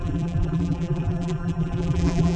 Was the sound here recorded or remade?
remade